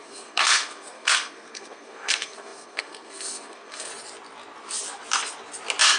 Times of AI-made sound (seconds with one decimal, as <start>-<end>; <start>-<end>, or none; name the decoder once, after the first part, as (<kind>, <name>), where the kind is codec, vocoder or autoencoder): 0.0-3.9 (codec, SNAC)